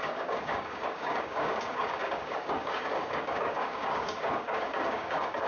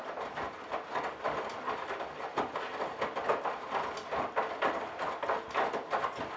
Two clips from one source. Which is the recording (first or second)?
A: second